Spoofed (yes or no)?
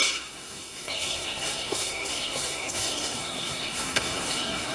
yes